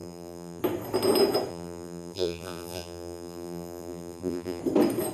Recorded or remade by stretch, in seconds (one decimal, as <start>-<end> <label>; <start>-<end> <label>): 0.0-0.6 remade; 0.6-1.5 recorded; 1.5-4.6 remade; 4.6-5.1 recorded

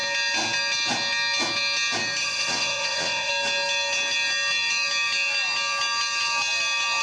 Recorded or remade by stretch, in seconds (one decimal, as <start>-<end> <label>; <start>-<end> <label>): 0.0-2.2 recorded; 2.2-3.3 remade; 3.3-7.0 recorded

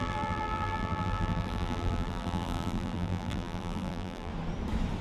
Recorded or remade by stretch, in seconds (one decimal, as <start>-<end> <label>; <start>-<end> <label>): 0.0-4.3 remade; 4.3-5.0 recorded

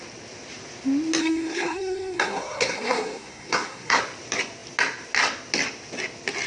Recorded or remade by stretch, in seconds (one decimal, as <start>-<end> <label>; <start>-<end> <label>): 0.0-1.2 recorded; 1.2-4.0 remade; 4.0-6.5 recorded

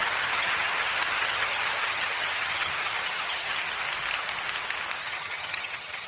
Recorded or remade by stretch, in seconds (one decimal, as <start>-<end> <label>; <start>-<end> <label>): 0.0-3.7 remade; 3.7-5.0 recorded; 5.0-6.1 remade

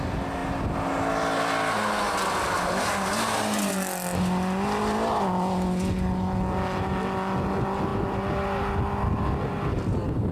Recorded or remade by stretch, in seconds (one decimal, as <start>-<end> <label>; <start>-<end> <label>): 0.0-10.3 recorded

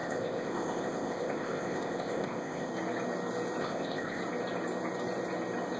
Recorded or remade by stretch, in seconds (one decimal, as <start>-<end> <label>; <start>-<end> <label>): 0.0-2.7 remade; 2.7-3.6 recorded; 3.6-4.2 remade; 4.2-5.8 recorded